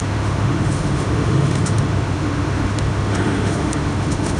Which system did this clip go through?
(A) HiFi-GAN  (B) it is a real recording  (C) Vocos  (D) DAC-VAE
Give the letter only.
D